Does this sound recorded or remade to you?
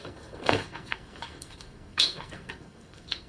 remade